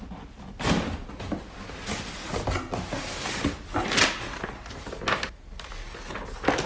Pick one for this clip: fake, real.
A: real